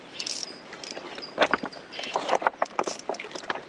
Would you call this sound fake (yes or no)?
yes